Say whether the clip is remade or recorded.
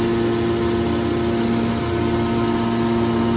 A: recorded